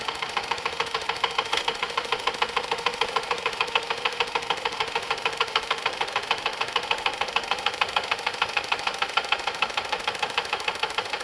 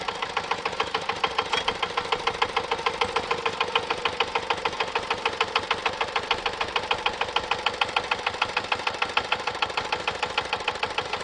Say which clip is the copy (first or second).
first